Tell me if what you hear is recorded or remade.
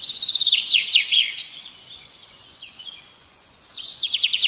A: remade